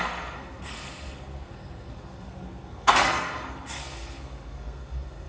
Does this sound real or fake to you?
fake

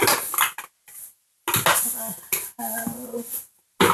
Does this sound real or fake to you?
real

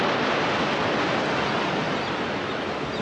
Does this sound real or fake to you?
real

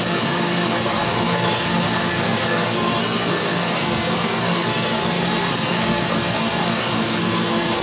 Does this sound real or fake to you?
fake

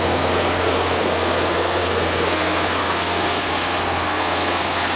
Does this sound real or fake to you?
fake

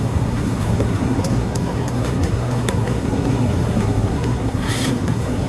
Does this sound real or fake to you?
fake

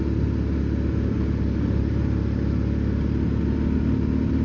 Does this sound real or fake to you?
real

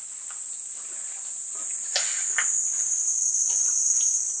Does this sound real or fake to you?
real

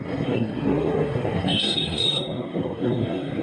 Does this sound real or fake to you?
fake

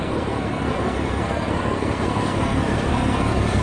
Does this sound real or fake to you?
fake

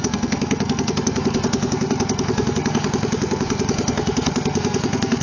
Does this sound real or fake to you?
fake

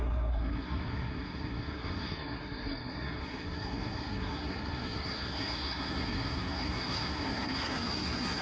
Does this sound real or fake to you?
fake